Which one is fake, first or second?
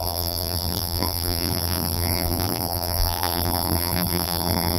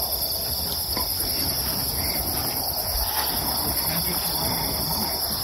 first